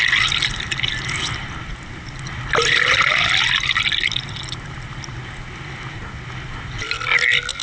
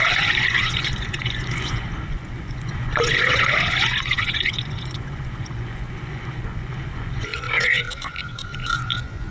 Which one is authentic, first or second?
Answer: first